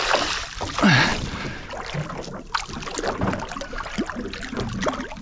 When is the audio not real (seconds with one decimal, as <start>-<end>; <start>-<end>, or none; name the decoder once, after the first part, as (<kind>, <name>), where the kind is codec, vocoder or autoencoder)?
none